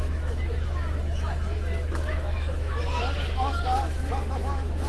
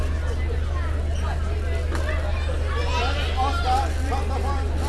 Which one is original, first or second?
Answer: second